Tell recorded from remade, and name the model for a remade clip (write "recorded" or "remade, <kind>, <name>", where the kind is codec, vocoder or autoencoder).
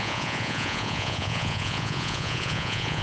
remade, vocoder, Vocos